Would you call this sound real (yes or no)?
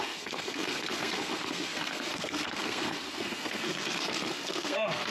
no